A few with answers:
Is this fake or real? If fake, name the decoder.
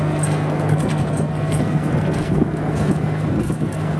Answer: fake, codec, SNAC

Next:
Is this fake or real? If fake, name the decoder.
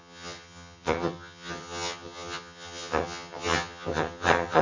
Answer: fake, vocoder, HiFi-GAN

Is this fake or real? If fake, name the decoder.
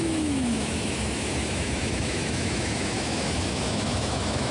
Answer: fake, autoencoder, DAC-VAE